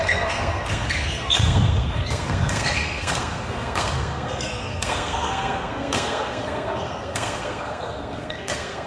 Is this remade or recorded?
remade